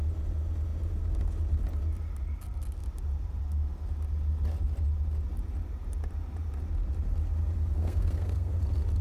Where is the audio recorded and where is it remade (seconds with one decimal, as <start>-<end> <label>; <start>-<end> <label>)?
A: 0.0-7.7 recorded; 7.7-8.5 remade; 8.5-9.0 recorded